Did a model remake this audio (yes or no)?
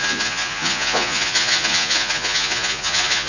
yes